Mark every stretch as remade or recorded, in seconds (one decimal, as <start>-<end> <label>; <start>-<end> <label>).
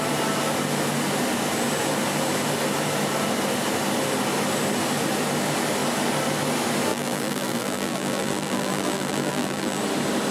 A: 0.0-6.9 recorded; 6.9-9.8 remade; 9.8-10.3 recorded